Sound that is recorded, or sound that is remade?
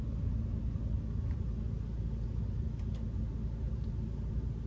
recorded